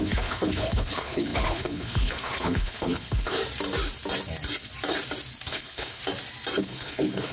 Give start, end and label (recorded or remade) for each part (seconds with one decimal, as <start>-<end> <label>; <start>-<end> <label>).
0.0-3.4 remade; 3.4-5.5 recorded; 5.5-6.0 remade; 6.0-6.6 recorded; 6.6-7.3 remade